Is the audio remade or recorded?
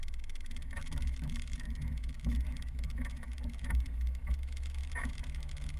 remade